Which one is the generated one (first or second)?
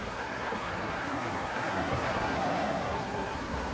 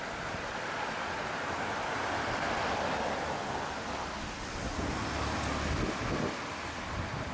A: first